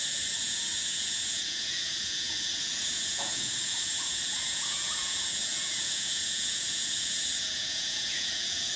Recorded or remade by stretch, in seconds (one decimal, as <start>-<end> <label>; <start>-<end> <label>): 0.0-8.8 remade